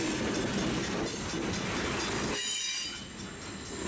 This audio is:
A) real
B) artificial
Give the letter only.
A